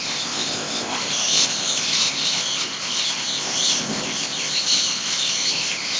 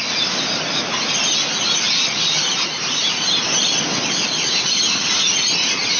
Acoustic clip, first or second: second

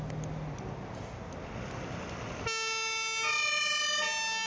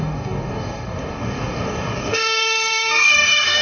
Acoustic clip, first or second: first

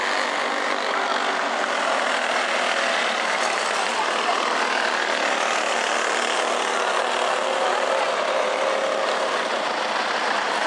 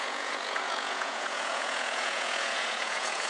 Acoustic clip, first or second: first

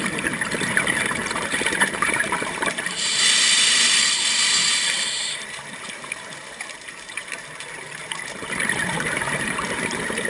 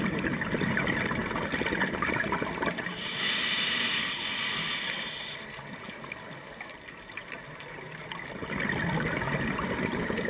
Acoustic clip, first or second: second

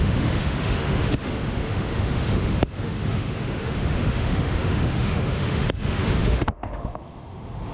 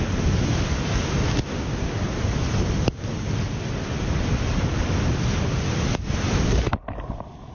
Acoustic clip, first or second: second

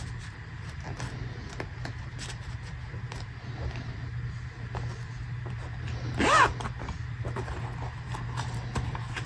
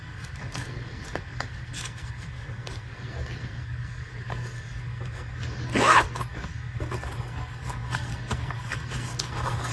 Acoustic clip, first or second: first